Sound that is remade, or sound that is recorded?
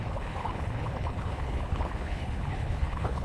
remade